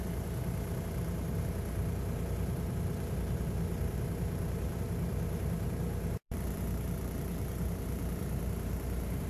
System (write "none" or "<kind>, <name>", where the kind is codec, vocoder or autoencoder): vocoder, BigVGAN v2